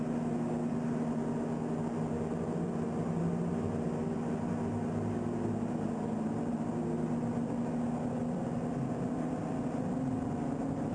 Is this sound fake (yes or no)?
no